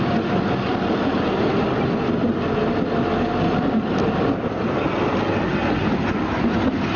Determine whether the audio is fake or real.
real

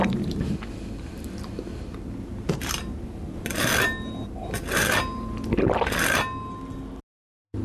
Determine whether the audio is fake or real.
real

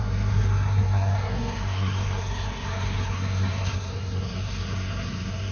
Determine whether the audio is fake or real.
fake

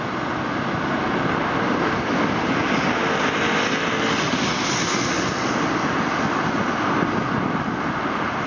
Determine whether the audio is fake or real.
real